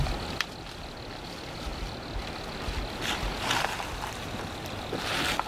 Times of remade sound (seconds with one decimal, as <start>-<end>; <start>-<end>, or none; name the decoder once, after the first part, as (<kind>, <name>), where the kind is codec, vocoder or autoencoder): none